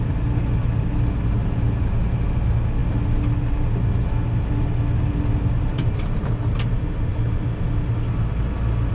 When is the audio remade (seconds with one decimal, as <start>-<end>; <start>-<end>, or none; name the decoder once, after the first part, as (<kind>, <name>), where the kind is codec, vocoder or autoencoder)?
none